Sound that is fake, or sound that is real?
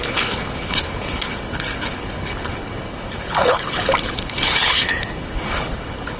fake